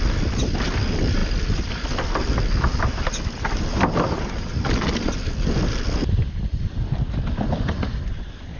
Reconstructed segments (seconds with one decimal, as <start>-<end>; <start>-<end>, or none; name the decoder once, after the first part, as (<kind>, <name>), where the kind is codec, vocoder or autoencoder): 1.2-1.7 (vocoder, BigVGAN v2); 2.7-4.5